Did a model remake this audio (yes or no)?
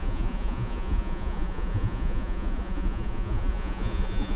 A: yes